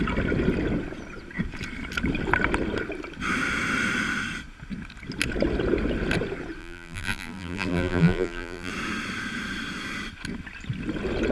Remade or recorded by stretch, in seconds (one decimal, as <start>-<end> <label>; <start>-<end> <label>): 0.0-6.6 recorded; 6.6-8.7 remade; 8.7-11.3 recorded